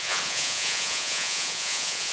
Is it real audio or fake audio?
fake